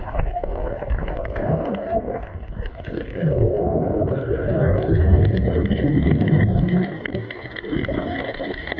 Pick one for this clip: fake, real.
fake